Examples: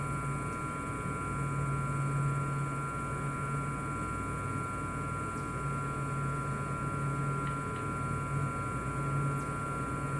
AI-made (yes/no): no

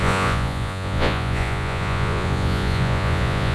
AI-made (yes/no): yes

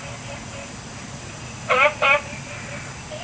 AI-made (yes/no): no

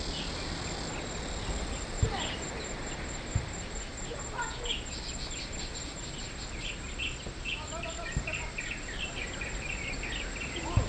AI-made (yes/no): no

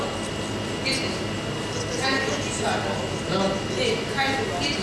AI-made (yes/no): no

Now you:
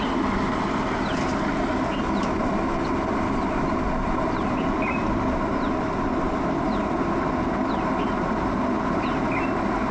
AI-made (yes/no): no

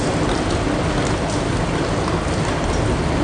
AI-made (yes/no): no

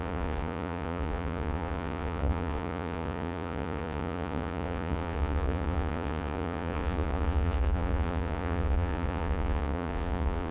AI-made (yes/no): yes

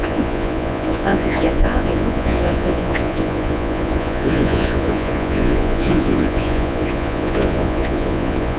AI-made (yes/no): yes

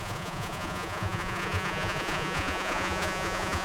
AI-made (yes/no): yes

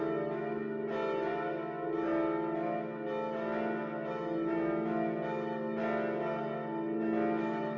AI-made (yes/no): no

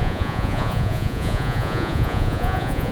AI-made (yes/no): yes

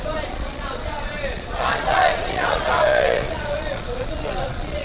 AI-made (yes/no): yes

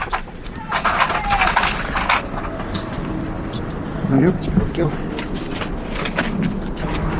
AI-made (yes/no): no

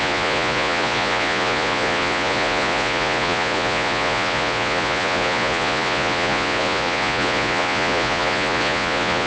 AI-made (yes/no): yes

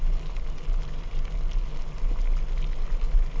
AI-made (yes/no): no